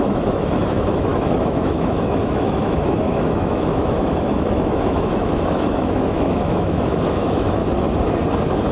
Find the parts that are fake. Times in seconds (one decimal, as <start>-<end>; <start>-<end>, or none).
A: 0.0-7.6